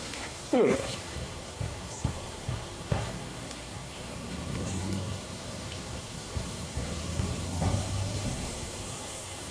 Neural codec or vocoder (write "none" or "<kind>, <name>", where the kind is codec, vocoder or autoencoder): codec, SNAC